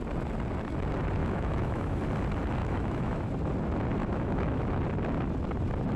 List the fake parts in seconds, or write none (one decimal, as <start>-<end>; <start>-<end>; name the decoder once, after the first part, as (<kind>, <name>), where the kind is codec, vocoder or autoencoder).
1.2-2.0 (autoencoder, DAC-VAE); 2.6-3.3; 4.0-4.8